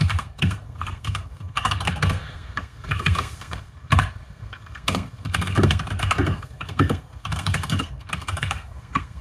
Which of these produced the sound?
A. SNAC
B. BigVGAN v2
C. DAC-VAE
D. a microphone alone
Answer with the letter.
A